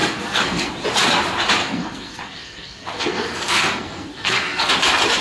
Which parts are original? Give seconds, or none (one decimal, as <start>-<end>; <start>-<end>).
0.7-1.6; 4.7-5.2